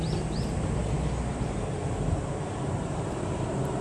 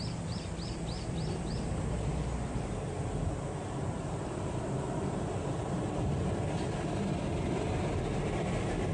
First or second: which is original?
first